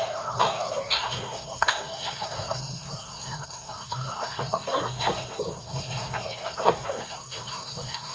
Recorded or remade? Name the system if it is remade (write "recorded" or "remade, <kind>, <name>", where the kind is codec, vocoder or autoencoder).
remade, codec, SNAC